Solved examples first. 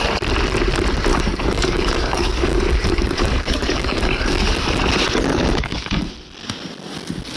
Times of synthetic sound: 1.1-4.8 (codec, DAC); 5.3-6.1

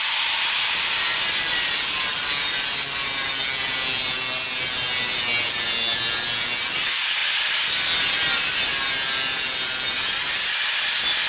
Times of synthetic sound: none